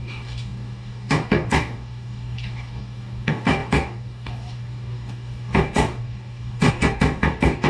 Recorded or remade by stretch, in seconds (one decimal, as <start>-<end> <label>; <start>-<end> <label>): 0.0-7.7 remade